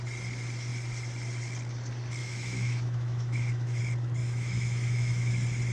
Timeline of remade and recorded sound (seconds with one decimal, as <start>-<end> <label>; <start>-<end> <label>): 0.0-2.2 recorded; 2.2-3.8 remade; 3.8-4.2 recorded; 4.2-5.3 remade; 5.3-5.7 recorded